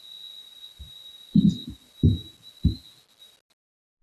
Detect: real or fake real